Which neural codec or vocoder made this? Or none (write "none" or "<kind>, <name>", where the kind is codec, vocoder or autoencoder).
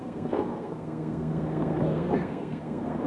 codec, SNAC